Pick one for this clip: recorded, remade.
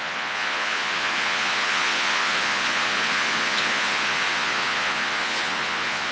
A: remade